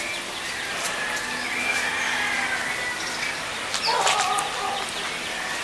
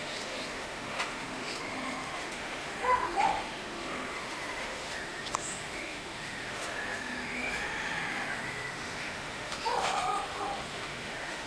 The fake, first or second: second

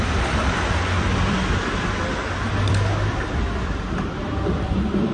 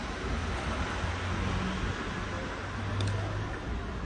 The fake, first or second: first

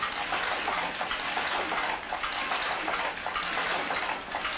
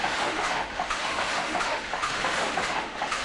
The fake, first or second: second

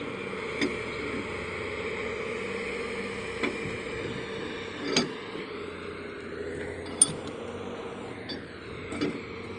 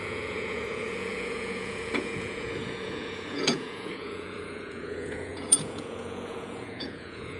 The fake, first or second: second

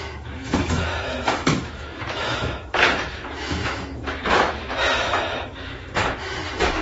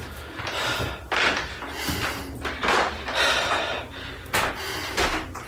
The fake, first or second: first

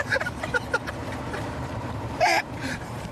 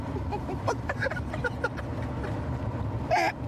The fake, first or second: first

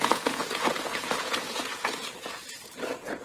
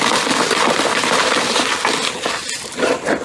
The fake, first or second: first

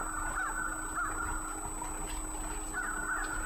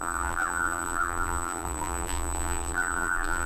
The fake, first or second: second